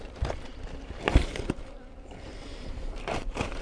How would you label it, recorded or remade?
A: remade